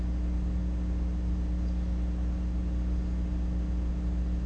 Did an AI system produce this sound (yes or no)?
no